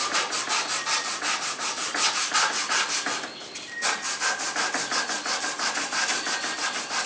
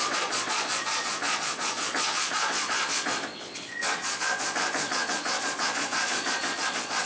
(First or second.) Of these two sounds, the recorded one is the first